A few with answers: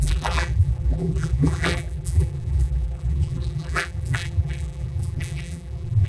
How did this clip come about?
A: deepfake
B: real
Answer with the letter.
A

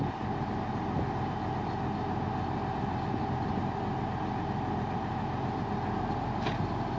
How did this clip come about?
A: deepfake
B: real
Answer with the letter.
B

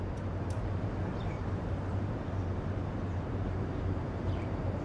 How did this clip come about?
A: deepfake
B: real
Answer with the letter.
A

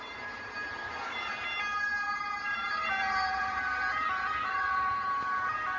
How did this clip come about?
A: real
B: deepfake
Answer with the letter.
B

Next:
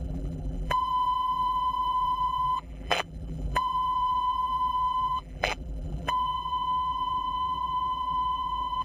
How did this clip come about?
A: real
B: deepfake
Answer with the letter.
B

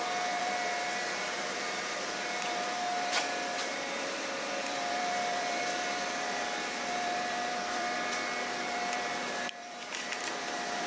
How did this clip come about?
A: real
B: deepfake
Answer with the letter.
B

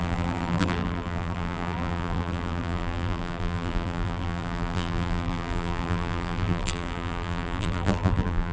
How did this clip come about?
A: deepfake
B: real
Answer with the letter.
A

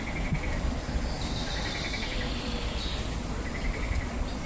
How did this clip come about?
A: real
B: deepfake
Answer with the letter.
A